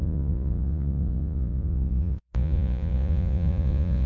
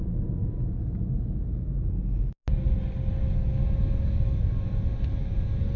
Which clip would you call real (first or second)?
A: second